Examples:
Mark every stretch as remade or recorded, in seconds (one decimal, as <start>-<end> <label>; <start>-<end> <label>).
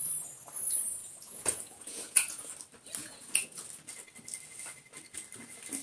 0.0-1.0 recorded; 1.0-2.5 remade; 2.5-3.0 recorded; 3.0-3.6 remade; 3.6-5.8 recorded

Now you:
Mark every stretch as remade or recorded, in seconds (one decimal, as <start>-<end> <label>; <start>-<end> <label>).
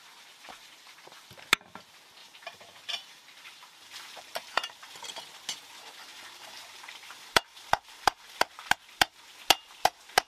0.0-2.2 recorded; 2.2-5.0 remade; 5.0-6.1 recorded; 6.1-8.2 remade; 8.2-10.3 recorded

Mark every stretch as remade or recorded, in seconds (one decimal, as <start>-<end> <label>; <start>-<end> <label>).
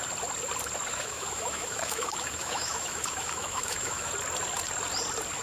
0.0-0.9 recorded; 0.9-4.1 remade; 4.1-5.4 recorded